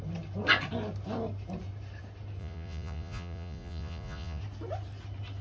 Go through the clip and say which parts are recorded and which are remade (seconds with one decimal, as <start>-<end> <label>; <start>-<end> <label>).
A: 0.0-2.4 recorded; 2.4-4.4 remade; 4.4-5.4 recorded